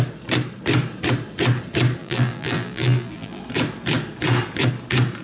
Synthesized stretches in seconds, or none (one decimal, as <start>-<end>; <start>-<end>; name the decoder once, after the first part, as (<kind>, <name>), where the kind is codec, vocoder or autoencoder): 2.0-3.4 (vocoder, BigVGAN v2)